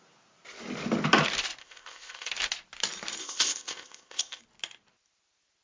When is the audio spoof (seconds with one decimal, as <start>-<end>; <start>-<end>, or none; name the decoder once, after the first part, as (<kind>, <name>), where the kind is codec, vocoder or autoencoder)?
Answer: 1.6-2.3 (codec, ZipCodec); 3.2-4.4